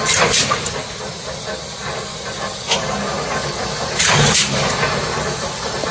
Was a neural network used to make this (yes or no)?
no